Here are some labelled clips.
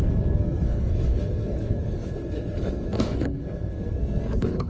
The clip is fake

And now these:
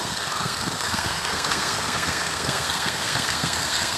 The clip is fake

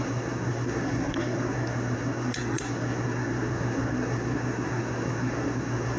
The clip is fake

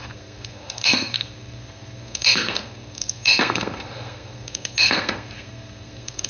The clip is fake